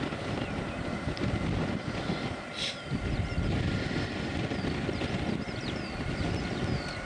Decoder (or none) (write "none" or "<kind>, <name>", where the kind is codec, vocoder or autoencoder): none